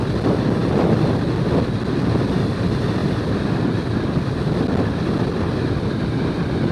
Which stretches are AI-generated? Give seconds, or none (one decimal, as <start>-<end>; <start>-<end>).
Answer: none